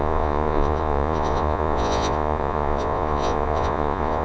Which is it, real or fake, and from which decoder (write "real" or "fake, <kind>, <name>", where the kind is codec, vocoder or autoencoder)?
fake, vocoder, Vocos